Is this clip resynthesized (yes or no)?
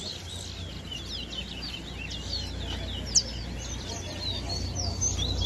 no